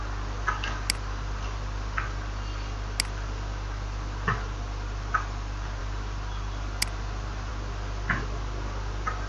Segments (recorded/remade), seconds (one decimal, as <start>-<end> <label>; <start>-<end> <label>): 0.0-9.3 recorded